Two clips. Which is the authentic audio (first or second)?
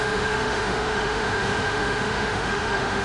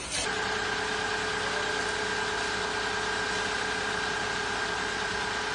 second